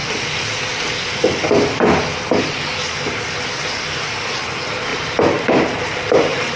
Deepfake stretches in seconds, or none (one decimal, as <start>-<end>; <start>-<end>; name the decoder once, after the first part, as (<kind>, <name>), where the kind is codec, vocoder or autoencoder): 4.9-6.6 (vocoder, BigVGAN v2)